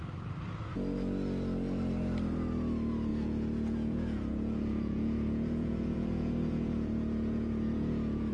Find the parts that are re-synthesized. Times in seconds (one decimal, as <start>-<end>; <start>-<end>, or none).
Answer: 3.1-8.3